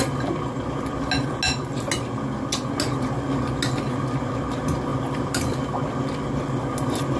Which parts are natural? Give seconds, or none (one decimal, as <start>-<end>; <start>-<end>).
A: 0.0-4.9; 5.6-7.2